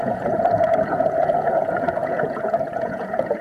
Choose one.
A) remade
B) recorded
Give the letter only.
A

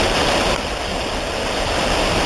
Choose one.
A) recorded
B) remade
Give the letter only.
A